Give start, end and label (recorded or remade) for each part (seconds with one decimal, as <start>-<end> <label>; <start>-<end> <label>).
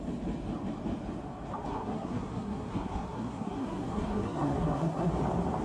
0.0-1.7 recorded; 1.7-5.1 remade; 5.1-5.6 recorded